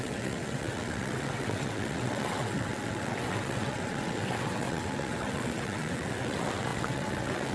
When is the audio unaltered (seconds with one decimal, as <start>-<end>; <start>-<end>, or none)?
none